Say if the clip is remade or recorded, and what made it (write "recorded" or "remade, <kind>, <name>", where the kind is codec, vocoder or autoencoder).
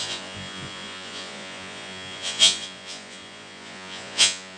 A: remade, vocoder, Vocos